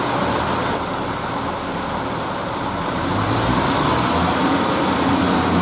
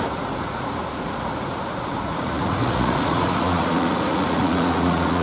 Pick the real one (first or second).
first